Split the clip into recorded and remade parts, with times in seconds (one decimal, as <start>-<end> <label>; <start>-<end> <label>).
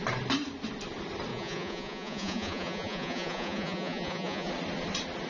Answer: 0.0-1.3 recorded; 1.3-4.5 remade; 4.5-5.3 recorded